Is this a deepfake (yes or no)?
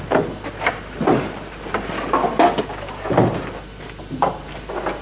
no